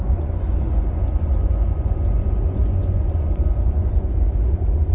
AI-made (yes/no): yes